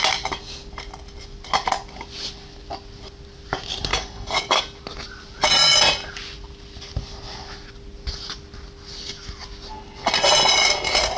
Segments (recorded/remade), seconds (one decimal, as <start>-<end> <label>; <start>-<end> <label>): 0.0-3.9 recorded; 3.9-4.6 remade; 4.6-11.2 recorded